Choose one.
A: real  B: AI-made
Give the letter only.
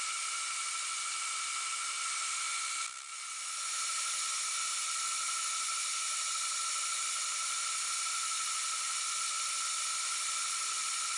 A